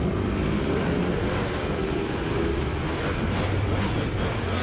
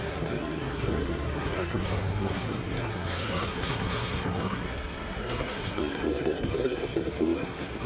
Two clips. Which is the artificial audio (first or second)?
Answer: second